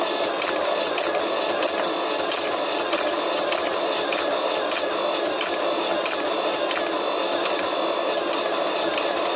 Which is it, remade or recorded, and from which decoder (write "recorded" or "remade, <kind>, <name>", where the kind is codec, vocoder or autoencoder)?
recorded